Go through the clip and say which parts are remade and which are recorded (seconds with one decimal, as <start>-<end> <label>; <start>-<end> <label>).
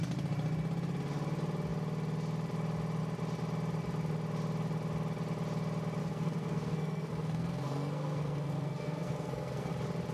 0.0-6.0 recorded; 6.0-9.7 remade; 9.7-10.1 recorded